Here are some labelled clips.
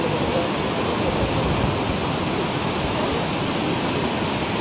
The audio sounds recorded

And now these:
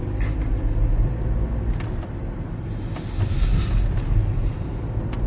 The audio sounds recorded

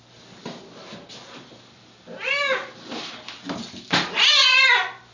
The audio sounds recorded